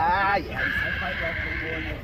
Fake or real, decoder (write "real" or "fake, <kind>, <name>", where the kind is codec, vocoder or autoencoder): fake, vocoder, BigVGAN v2